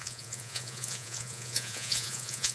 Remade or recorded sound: remade